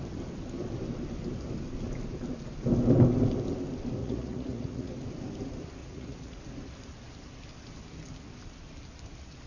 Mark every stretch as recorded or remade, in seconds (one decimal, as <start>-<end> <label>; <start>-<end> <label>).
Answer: 0.0-4.0 recorded; 4.0-4.9 remade; 4.9-5.8 recorded; 5.8-6.4 remade; 6.4-9.5 recorded